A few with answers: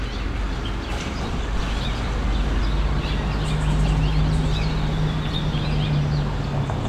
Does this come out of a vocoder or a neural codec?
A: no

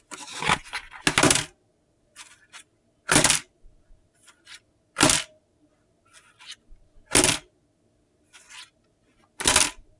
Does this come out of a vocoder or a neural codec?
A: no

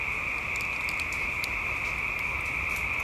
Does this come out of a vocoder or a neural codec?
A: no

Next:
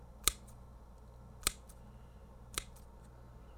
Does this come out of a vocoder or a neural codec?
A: no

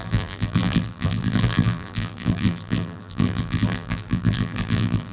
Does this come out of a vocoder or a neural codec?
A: yes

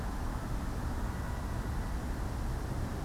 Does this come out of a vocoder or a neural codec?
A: no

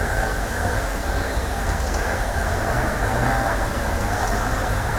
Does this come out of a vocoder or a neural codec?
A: yes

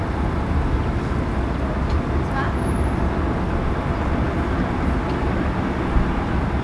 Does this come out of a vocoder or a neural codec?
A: no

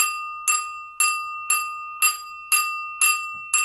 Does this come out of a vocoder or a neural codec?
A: no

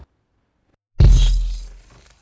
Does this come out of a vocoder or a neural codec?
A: no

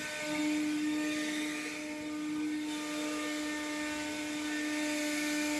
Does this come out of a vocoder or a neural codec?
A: no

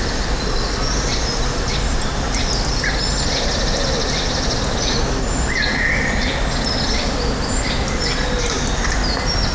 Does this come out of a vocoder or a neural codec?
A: no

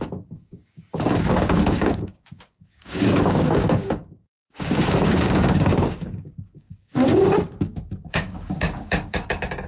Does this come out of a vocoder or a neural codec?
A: yes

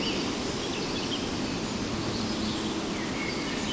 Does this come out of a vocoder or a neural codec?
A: no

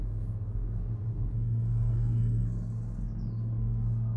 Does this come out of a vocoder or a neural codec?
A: yes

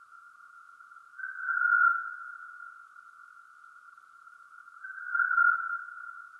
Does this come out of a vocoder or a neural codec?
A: no